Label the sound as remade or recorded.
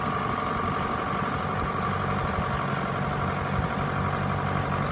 recorded